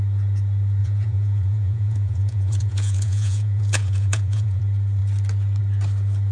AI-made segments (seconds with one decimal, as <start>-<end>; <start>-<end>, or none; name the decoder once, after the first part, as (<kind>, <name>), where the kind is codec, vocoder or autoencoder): 0.8-4.6 (vocoder, Vocos)